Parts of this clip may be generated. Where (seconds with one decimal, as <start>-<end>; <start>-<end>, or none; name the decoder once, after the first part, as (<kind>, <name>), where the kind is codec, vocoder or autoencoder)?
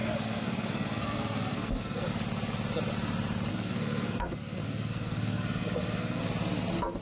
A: 0.0-2.1 (codec, SNAC); 3.5-6.2